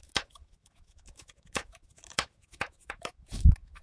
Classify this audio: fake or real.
fake